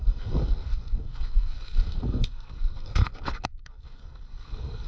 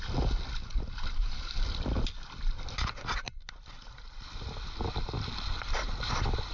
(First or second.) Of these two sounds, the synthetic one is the first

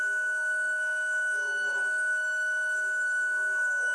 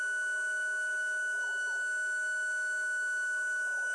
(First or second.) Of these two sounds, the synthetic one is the first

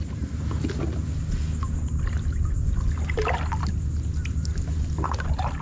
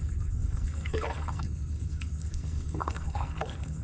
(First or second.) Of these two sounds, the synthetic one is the second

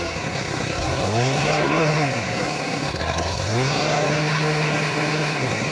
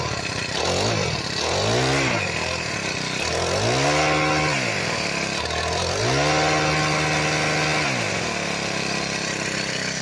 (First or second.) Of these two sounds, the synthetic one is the first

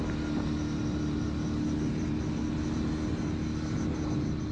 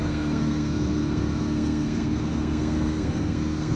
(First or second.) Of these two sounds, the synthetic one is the second